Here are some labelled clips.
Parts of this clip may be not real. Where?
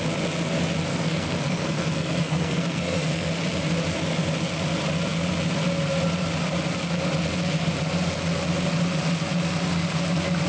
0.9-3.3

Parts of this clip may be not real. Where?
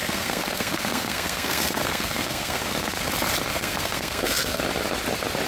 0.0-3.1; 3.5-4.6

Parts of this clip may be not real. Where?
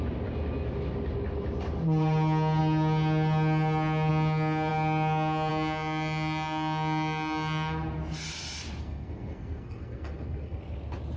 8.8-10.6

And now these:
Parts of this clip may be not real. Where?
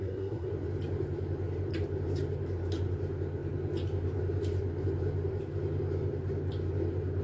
0.0-0.5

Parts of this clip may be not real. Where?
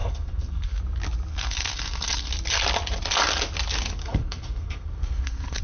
0.0-0.8; 1.3-2.3; 4.0-5.6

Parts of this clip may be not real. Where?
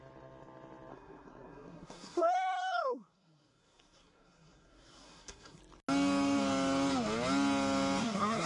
0.9-5.6; 8.0-8.5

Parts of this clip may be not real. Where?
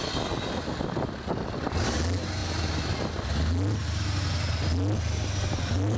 none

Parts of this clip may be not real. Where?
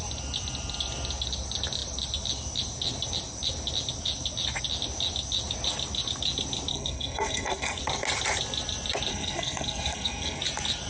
6.7-7.8; 9.1-10.4